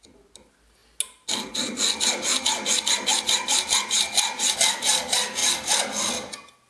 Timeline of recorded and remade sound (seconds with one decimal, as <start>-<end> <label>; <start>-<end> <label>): 0.0-6.7 recorded